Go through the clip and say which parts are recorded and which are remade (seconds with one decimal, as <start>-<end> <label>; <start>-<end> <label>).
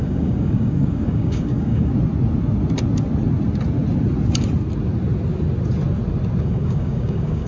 0.0-1.9 remade; 1.9-6.4 recorded; 6.4-7.5 remade